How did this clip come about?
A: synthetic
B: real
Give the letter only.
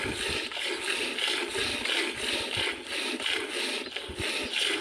B